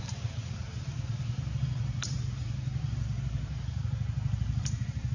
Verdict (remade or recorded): remade